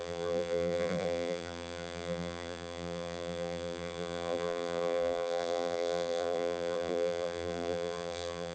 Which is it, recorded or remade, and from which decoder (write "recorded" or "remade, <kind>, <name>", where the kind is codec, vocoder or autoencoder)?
remade, vocoder, BigVGAN v2